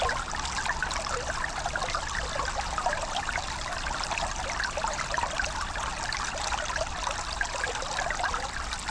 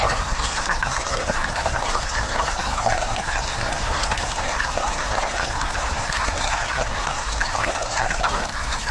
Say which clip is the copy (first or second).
second